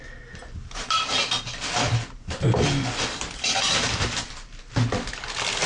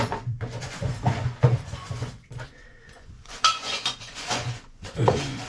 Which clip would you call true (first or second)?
first